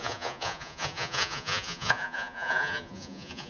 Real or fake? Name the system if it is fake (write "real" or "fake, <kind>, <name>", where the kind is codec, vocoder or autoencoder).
fake, vocoder, Vocos